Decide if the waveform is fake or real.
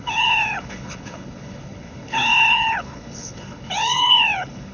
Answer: fake